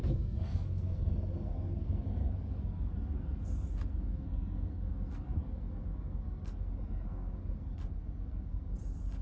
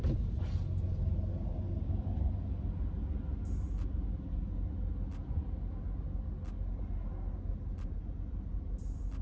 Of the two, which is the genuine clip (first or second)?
second